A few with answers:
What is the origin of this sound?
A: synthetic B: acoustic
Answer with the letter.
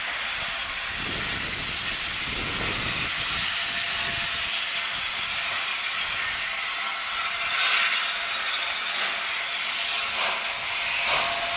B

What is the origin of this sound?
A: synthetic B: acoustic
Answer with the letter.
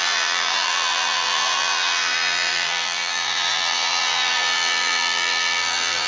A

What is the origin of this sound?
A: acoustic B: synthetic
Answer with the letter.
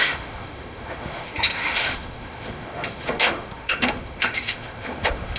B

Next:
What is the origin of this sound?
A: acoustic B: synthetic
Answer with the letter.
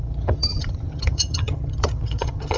B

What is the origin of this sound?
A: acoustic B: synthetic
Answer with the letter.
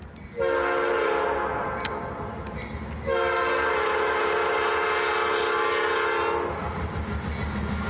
A